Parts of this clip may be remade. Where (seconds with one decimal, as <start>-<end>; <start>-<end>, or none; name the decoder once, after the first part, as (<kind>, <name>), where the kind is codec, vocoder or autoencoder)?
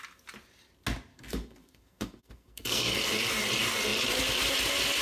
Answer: 1.1-3.1 (codec, SNAC)